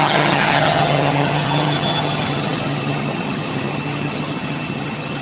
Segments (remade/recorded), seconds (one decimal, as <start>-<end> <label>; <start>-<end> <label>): 0.0-5.2 remade